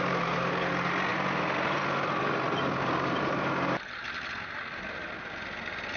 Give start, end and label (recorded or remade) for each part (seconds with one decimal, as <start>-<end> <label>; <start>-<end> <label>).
0.0-6.0 recorded